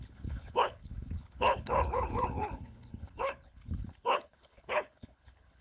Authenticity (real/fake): fake